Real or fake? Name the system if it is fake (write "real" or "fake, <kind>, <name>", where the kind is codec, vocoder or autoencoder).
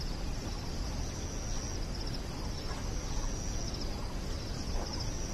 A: real